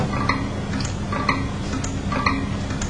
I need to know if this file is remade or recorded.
recorded